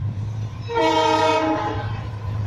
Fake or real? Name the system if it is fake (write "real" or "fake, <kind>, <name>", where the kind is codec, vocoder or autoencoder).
fake, vocoder, BigVGAN v2